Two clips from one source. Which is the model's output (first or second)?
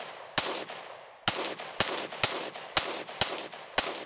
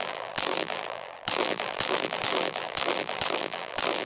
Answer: second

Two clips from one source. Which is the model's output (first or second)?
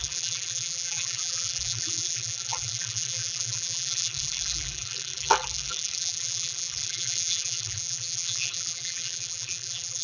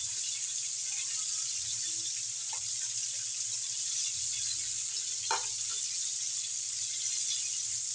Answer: first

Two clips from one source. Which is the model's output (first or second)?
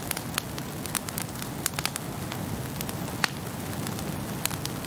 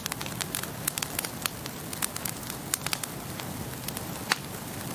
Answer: second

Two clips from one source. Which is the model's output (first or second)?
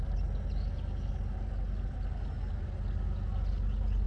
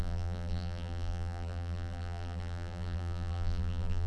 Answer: second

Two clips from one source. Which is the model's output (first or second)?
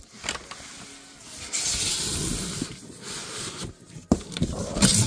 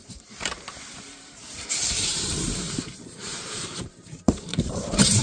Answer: second